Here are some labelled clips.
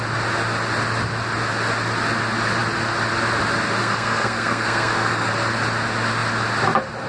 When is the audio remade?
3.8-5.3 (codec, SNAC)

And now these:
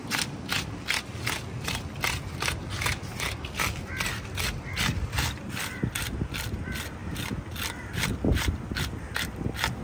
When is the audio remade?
none

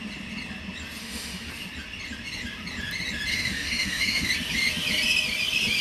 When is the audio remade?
1.0-1.5 (autoencoder, DAC-VAE); 3.3-4.3

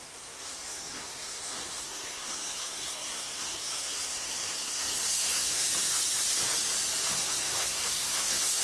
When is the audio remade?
0.0-5.7 (codec, SNAC); 7.1-8.6

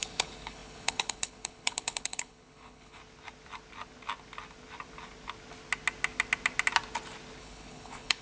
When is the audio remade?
0.0-3.0 (codec, HILCodec); 7.4-8.2

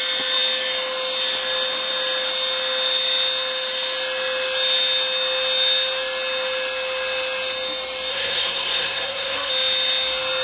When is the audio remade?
8.1-9.5 (codec, SNAC)

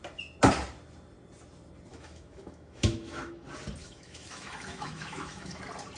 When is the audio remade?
1.9-3.4 (autoencoder, DAC-VAE); 3.8-5.6

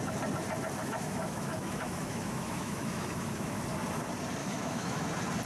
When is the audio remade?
0.8-3.6 (autoencoder, DAC-VAE); 4.4-5.0